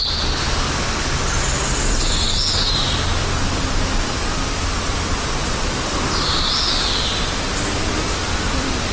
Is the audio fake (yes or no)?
no